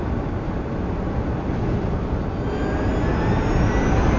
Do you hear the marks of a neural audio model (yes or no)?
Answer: no